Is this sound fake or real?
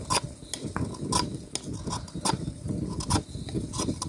real